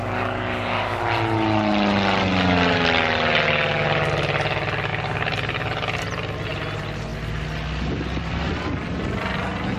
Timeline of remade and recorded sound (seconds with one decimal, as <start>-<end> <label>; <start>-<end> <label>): 0.0-1.0 remade; 1.0-9.8 recorded